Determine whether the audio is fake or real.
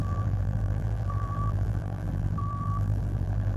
fake